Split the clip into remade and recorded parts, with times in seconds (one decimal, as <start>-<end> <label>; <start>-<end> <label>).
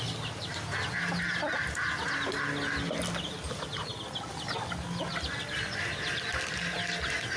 0.0-7.4 recorded